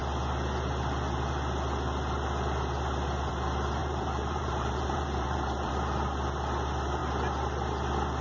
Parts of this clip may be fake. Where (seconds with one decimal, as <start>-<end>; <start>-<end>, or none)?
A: 3.8-5.7